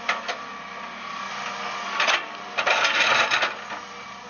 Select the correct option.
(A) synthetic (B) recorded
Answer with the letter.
B